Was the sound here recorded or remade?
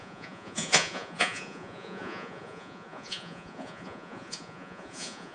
remade